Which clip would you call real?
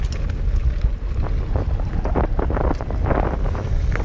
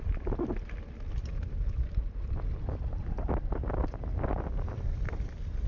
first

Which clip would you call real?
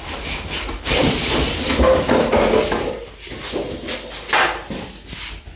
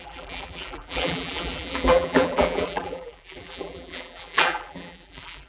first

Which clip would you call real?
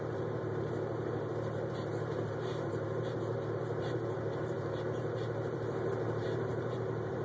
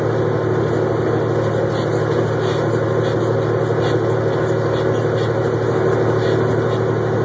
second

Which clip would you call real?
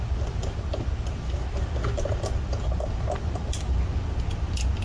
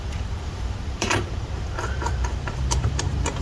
first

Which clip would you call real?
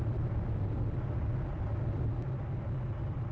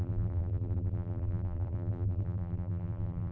first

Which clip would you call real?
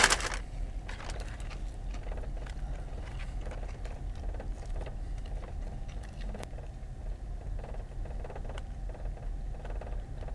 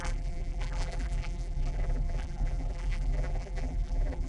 first